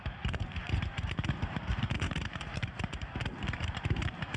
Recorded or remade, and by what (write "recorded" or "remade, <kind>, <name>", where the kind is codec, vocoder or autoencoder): remade, vocoder, BigVGAN v2